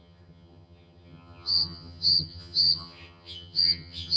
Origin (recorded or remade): remade